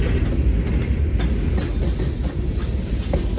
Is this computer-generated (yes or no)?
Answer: no